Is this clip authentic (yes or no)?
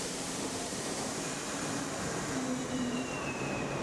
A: no